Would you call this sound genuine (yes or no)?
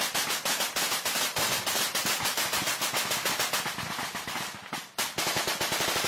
yes